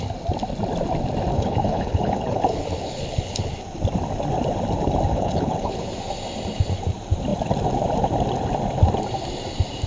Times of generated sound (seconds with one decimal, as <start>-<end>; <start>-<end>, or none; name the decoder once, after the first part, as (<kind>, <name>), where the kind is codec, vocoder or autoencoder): 1.3-3.5 (codec, HILCodec); 5.1-5.9

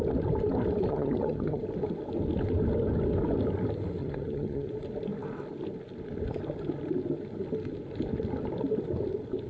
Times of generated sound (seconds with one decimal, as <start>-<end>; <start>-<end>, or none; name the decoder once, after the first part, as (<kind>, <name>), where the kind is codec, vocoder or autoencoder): 0.9-1.6 (vocoder, HiFi-GAN); 4.0-4.7

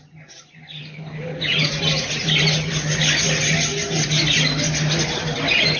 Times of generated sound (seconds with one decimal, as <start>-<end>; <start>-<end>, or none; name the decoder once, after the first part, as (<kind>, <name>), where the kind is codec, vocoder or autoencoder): 0.8-1.4 (codec, HILCodec)

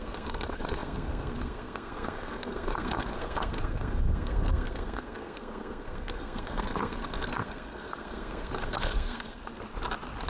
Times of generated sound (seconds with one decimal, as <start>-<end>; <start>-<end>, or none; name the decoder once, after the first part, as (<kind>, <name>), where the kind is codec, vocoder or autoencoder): 0.0-9.4 (codec, SNAC)

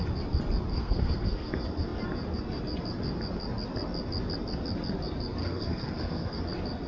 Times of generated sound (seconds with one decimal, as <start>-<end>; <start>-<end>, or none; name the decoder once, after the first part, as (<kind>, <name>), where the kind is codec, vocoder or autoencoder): 0.7-1.5 (codec, SNAC); 5.4-6.4

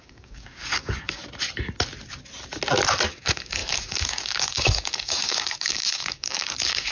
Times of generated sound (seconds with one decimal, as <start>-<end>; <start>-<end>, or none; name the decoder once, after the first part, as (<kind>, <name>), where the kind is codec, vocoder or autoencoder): 0.0-1.2 (codec, DAC); 3.1-6.9

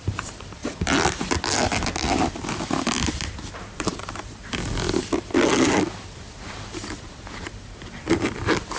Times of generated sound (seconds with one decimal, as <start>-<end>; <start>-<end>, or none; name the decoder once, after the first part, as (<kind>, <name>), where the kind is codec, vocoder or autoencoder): 0.0-0.6 (vocoder, BigVGAN v2); 1.2-8.8

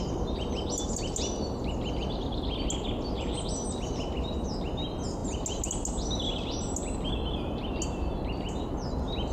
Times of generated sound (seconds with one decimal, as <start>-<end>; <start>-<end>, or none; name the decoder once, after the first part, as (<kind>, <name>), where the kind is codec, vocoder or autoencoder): none